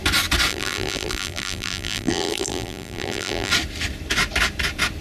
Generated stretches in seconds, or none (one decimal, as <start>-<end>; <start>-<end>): 0.5-3.5